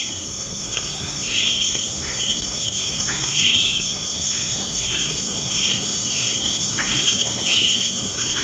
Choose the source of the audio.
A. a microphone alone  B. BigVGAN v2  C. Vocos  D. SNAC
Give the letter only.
D